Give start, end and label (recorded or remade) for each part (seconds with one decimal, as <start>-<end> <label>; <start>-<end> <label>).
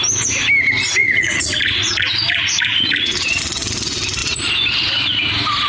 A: 0.0-1.0 recorded; 1.0-3.4 remade; 3.4-5.7 recorded